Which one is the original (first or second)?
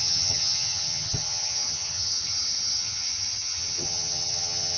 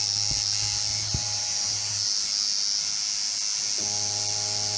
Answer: second